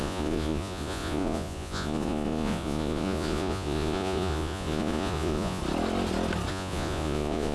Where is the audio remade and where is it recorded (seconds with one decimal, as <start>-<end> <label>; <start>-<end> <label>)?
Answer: 0.0-5.6 remade; 5.6-6.5 recorded; 6.5-7.5 remade